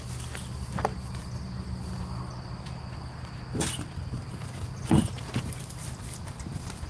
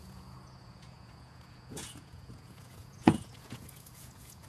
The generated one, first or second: second